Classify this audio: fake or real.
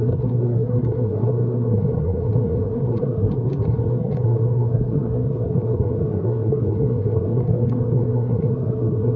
fake